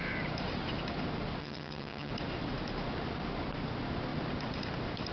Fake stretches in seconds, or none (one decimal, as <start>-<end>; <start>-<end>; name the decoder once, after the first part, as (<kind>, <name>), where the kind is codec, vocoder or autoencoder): 1.4-2.1 (vocoder, HiFi-GAN)